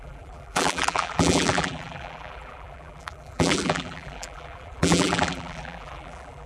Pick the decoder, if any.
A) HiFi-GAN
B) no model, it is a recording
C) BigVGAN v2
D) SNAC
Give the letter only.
C